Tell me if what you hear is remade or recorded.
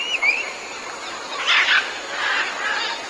recorded